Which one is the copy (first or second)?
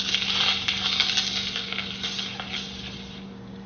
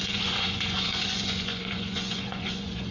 second